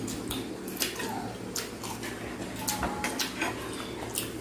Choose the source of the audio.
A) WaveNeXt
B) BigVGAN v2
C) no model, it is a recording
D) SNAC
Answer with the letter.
C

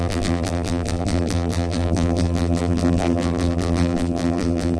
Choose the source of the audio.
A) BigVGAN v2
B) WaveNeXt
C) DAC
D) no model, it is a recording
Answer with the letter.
A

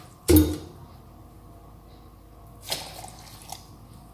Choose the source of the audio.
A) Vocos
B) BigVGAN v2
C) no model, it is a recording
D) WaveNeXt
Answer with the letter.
C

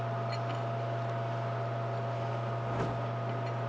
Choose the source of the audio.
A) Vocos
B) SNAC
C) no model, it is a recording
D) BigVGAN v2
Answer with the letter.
C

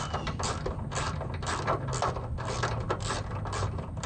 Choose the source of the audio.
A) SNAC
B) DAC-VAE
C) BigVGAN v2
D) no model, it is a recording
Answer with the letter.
C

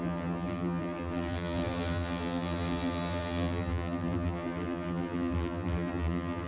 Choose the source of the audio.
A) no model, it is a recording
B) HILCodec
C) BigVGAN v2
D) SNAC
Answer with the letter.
C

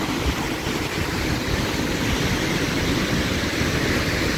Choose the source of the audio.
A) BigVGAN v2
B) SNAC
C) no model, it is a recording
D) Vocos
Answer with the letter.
A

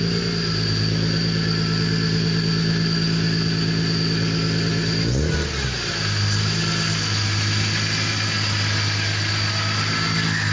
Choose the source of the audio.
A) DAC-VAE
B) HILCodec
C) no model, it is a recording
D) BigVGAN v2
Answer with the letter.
C